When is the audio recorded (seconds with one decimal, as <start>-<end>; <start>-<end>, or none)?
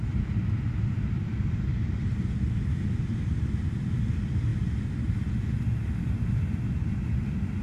0.0-7.6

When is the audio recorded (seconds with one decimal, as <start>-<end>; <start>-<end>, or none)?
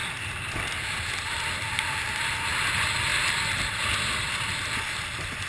0.0-5.5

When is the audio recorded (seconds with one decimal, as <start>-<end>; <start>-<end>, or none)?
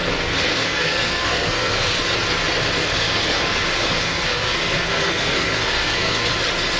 2.0-2.8; 6.3-6.8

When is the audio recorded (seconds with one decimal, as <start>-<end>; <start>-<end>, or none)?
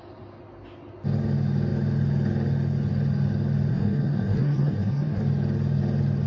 0.0-3.7; 5.2-6.3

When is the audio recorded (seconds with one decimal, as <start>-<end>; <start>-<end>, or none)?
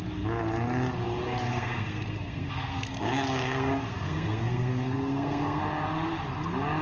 0.0-1.5; 5.6-6.8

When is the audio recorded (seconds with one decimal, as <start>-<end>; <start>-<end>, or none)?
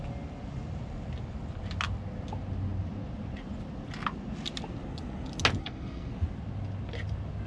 0.0-5.6; 6.1-7.5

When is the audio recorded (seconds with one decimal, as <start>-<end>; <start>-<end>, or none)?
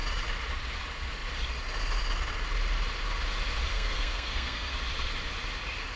0.0-3.7; 4.7-6.0